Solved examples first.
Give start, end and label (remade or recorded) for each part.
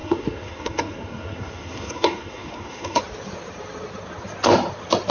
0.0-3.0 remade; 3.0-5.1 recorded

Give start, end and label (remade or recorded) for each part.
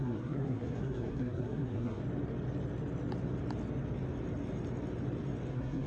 0.0-2.0 remade; 2.0-5.5 recorded; 5.5-5.9 remade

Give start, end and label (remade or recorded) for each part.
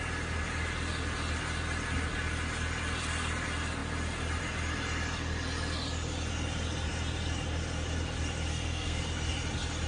0.0-8.5 recorded; 8.5-9.0 remade; 9.0-9.9 recorded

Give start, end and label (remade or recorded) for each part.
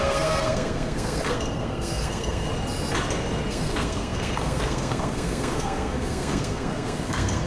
0.0-2.5 remade; 2.5-3.5 recorded; 3.5-7.5 remade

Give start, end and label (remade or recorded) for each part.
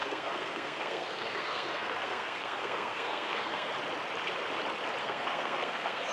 0.0-3.7 remade; 3.7-5.0 recorded; 5.0-6.1 remade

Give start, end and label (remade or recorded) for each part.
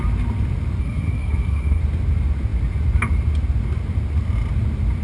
0.0-0.8 recorded; 0.8-1.8 remade; 1.8-5.0 recorded